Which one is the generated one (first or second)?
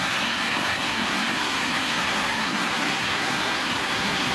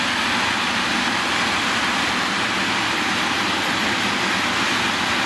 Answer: first